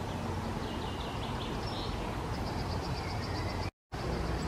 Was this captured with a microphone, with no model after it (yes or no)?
yes